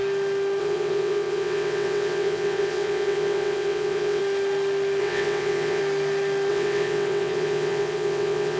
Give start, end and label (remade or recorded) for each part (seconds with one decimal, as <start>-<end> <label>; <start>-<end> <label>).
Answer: 0.0-0.6 recorded; 0.6-4.2 remade; 4.2-5.0 recorded; 5.0-5.8 remade; 5.8-6.5 recorded; 6.5-8.6 remade